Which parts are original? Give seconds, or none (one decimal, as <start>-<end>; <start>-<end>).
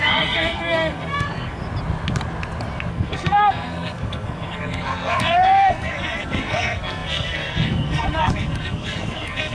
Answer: 1.6-2.9